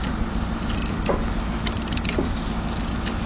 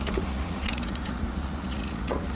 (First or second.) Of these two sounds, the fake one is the second